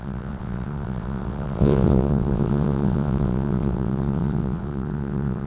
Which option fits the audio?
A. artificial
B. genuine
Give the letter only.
A